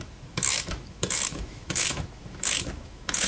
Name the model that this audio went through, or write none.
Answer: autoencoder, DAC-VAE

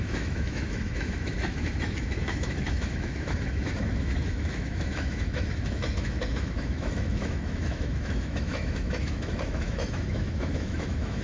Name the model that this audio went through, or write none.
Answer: autoencoder, DAC-VAE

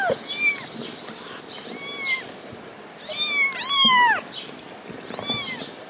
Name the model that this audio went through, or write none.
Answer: none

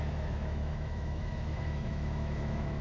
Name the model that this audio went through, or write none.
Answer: autoencoder, DAC-VAE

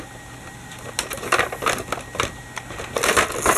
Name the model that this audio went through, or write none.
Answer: none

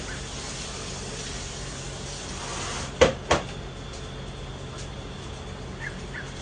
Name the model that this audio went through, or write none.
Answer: none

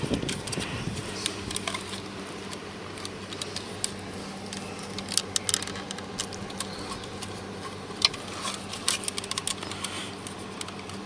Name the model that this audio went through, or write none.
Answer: none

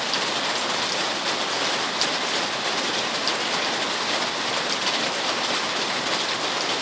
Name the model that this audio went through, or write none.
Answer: none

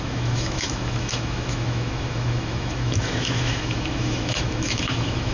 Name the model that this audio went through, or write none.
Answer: autoencoder, DAC-VAE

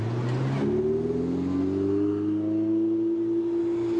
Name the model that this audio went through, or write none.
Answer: none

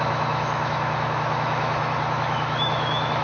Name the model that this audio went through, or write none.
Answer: autoencoder, DAC-VAE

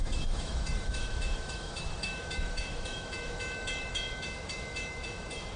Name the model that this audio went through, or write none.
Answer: autoencoder, DAC-VAE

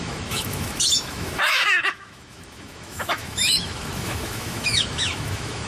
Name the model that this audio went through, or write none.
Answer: autoencoder, DAC-VAE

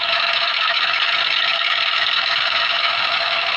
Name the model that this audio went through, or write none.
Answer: autoencoder, DAC-VAE